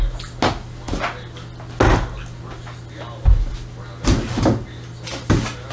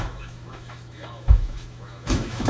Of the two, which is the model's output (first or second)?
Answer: second